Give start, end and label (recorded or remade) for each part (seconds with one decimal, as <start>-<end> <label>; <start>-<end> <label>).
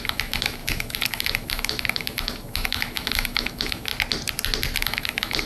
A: 0.0-3.9 remade; 3.9-4.8 recorded; 4.8-5.5 remade